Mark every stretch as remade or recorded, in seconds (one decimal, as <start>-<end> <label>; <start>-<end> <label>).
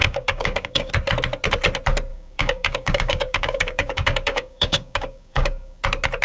0.0-0.9 remade; 0.9-2.1 recorded; 2.1-5.8 remade; 5.8-6.2 recorded